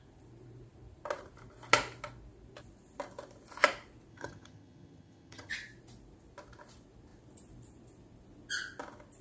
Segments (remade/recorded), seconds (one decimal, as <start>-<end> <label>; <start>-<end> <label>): 0.0-4.1 recorded; 4.1-5.5 remade; 5.5-9.2 recorded